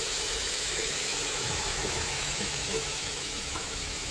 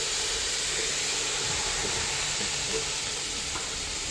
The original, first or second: second